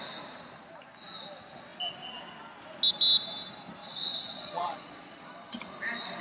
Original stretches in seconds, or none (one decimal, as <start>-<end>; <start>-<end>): 0.0-3.8; 5.6-6.2